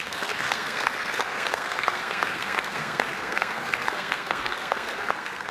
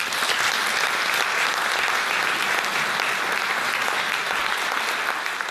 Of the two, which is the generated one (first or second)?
first